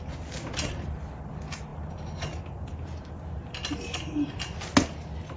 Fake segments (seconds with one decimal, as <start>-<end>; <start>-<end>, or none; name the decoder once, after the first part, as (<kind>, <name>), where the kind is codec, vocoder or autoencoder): none